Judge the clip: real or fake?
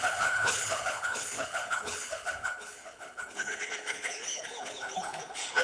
fake